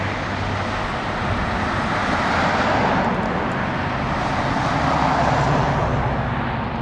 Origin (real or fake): real